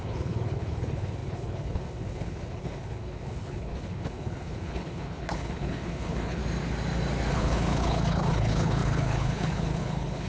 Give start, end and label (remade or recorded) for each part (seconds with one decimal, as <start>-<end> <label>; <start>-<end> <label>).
0.0-6.4 remade; 6.4-7.3 recorded; 7.3-10.3 remade